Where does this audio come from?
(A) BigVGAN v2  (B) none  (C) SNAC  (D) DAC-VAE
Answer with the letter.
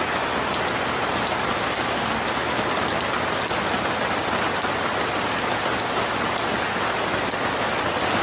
B